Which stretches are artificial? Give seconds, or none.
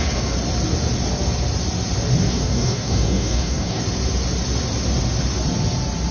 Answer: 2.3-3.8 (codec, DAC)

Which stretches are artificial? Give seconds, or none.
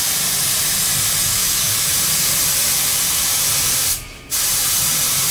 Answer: 1.2-1.9 (codec, DAC)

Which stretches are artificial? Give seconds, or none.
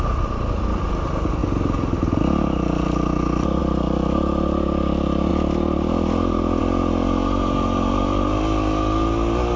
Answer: none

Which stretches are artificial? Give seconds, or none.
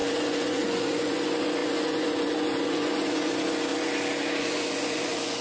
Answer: 0.0-3.7 (vocoder, Vocos); 4.4-5.4